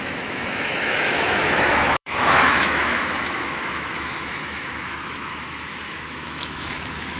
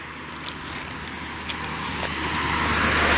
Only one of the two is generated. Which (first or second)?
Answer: first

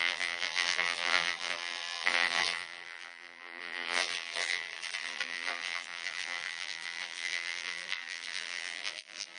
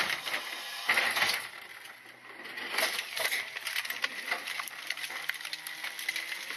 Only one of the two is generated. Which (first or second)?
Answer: first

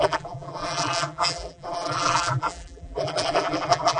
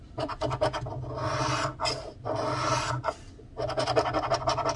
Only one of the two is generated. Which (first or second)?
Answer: first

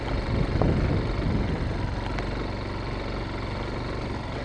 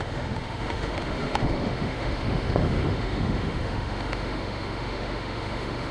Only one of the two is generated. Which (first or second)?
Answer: second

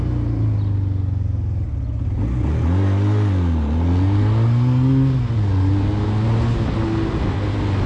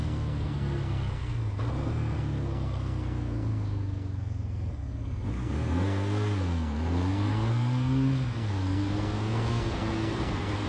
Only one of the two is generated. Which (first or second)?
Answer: second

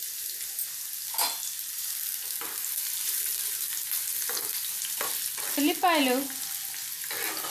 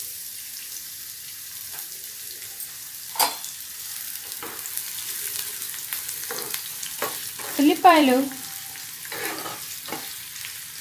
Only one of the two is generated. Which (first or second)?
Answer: second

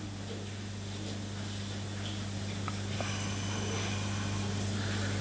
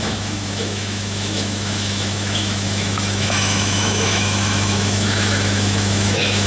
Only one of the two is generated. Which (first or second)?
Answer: second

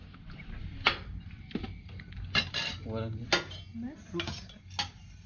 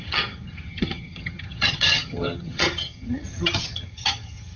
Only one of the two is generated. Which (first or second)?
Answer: second